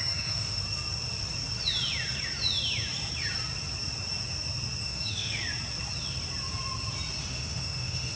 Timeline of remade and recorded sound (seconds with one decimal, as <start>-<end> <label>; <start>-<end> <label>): 0.0-0.6 remade; 0.6-4.8 recorded; 4.8-5.4 remade; 5.4-7.2 recorded; 7.2-8.2 remade

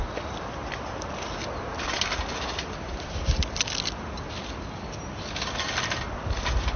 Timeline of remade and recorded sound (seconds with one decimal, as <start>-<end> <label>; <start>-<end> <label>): 0.0-6.8 recorded